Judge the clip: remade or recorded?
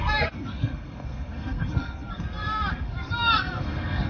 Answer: remade